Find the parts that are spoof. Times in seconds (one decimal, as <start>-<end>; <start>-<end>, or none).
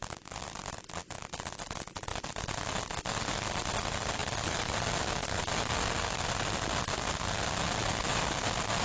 none